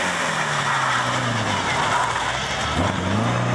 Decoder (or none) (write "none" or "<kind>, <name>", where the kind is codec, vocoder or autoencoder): none